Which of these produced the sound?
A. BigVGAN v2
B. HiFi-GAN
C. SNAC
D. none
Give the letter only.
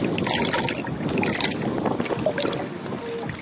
D